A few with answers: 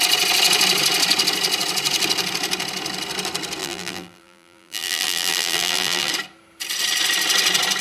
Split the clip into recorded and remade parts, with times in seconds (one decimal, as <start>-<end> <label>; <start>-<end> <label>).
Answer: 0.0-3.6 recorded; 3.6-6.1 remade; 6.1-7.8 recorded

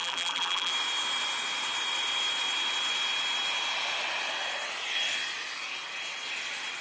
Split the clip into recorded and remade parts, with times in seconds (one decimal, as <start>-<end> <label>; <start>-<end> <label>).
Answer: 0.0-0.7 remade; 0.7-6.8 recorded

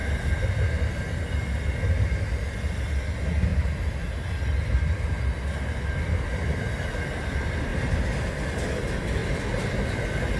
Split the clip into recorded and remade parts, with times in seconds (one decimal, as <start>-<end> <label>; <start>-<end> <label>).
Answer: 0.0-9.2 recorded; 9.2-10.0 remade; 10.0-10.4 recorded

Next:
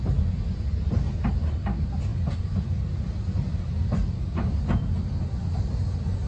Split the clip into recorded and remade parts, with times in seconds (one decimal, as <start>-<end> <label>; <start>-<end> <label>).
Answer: 0.0-6.3 recorded

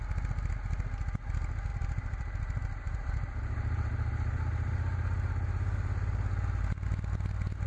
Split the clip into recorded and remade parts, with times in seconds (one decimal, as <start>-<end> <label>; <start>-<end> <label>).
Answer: 0.0-1.7 recorded; 1.7-6.3 remade; 6.3-7.7 recorded